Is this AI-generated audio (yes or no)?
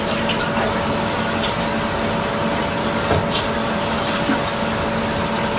no